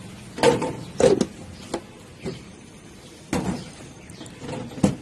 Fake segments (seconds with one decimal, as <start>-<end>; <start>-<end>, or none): 2.1-4.6